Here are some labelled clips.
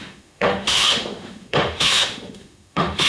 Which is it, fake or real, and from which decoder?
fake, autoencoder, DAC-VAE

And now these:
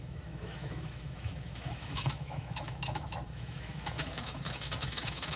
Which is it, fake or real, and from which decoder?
fake, autoencoder, DAC-VAE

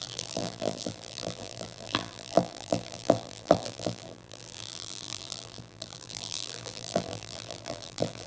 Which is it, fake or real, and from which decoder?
fake, vocoder, BigVGAN v2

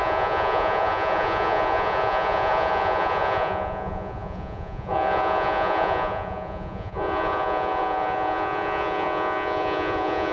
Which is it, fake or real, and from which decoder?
fake, vocoder, Vocos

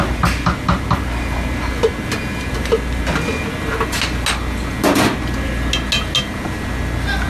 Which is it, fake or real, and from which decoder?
real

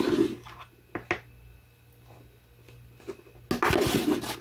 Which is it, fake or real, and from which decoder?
real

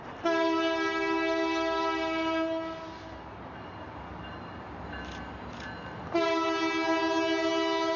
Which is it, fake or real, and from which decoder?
real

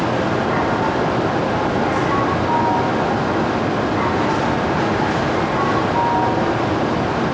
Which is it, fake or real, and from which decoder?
real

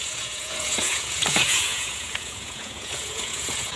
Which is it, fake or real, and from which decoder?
fake, vocoder, Vocos